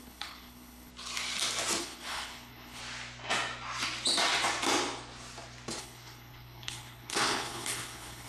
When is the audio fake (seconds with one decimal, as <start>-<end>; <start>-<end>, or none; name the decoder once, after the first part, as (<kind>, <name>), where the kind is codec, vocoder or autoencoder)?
0.0-0.9 (codec, HILCodec); 1.8-2.8; 5.8-8.3